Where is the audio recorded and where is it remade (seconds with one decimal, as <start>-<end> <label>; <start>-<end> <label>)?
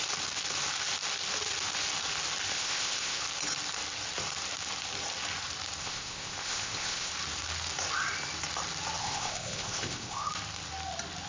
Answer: 0.0-2.5 recorded; 2.5-3.2 remade; 3.2-5.8 recorded; 5.8-7.1 remade; 7.1-9.0 recorded; 9.0-10.3 remade; 10.3-11.3 recorded